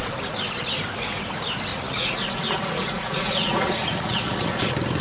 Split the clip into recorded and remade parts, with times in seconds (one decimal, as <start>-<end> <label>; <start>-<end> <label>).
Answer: 0.0-1.7 recorded; 1.7-4.6 remade; 4.6-5.0 recorded